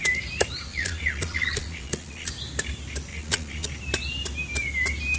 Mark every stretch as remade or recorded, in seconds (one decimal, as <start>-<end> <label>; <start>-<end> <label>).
0.0-0.7 recorded; 0.7-2.3 remade; 2.3-3.1 recorded; 3.1-3.7 remade; 3.7-5.2 recorded